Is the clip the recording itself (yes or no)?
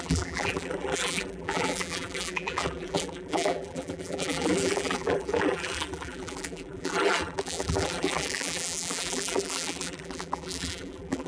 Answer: no